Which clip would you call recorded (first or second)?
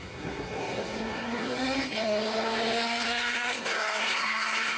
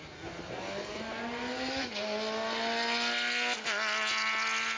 second